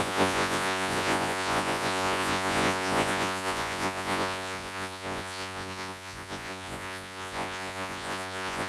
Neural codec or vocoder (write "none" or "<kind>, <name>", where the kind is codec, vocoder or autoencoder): vocoder, Vocos